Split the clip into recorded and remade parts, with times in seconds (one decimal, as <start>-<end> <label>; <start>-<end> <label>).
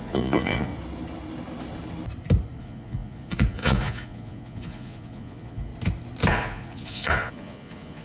0.0-0.7 remade; 0.7-2.6 recorded; 2.6-5.7 remade; 5.7-6.3 recorded; 6.3-8.0 remade